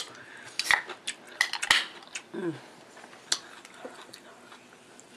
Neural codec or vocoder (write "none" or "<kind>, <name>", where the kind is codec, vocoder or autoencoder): none